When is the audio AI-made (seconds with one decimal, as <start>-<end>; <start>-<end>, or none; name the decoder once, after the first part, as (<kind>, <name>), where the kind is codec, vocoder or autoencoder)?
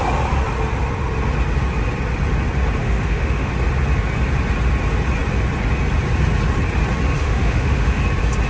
2.8-3.5 (autoencoder, DAC-VAE); 7.2-8.0